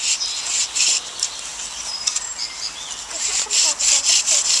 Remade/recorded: recorded